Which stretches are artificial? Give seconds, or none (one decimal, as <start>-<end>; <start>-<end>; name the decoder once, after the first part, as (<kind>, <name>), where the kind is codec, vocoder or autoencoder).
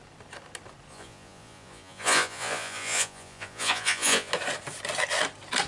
0.9-4.3 (vocoder, Vocos)